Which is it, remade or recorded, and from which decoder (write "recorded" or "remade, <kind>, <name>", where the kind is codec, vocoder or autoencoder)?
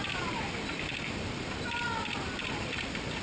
recorded